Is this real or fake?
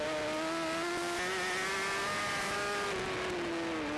real